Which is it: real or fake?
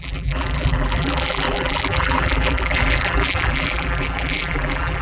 fake